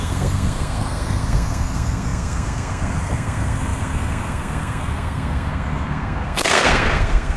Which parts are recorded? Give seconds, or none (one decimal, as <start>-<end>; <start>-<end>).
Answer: none